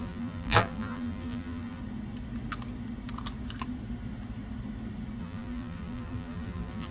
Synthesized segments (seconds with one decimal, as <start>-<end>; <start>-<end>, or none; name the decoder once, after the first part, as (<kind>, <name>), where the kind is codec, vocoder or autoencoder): 0.0-1.8 (vocoder, BigVGAN v2); 5.2-6.9